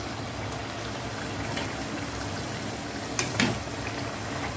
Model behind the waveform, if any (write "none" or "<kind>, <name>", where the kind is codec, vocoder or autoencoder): none